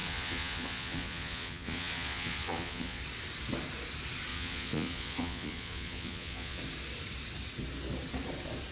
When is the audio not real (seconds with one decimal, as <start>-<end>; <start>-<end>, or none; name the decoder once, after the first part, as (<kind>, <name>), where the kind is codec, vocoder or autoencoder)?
0.0-3.0 (vocoder, Vocos); 4.3-6.6